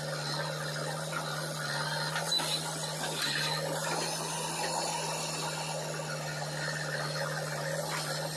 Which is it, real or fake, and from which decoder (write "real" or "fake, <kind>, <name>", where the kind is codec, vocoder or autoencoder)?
real